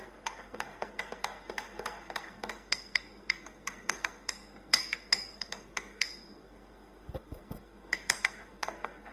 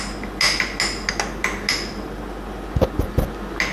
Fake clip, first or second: first